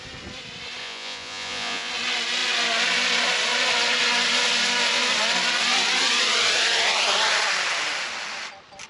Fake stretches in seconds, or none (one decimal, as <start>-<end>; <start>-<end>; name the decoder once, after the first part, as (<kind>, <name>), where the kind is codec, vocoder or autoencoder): 0.8-1.9 (vocoder, Vocos)